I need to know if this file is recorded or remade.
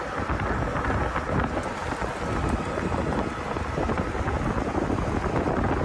recorded